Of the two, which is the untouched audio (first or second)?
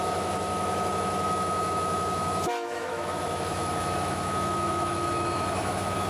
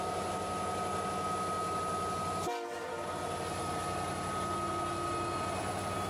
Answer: second